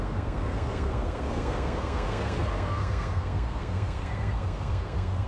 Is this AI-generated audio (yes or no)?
yes